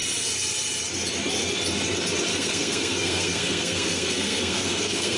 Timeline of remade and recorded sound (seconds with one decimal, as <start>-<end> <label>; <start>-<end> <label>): 0.0-2.3 recorded; 2.3-5.2 remade

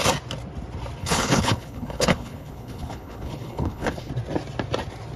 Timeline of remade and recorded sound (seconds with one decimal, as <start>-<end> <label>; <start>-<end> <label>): 0.0-1.0 recorded; 1.0-4.1 remade; 4.1-5.2 recorded

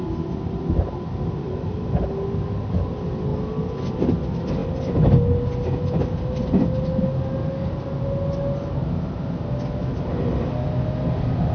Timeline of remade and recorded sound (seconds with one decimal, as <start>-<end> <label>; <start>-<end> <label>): 0.0-11.5 recorded

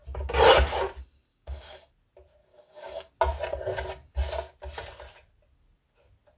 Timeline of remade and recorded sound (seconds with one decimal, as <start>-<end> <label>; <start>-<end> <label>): 0.0-1.3 recorded; 1.3-1.9 remade; 1.9-2.4 recorded; 2.4-3.1 remade; 3.1-6.4 recorded

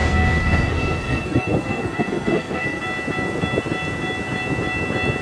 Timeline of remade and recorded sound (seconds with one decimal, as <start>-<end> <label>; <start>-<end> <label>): 0.0-2.8 remade; 2.8-5.2 recorded

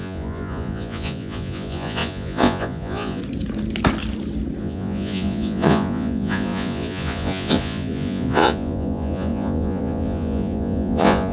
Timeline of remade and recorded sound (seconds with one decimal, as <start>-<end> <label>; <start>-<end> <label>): 0.0-3.2 remade; 3.2-4.6 recorded; 4.6-11.3 remade